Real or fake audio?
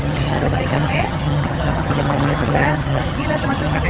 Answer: fake